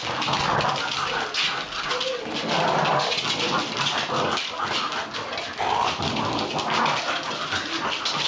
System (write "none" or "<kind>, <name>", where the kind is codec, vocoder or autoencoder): none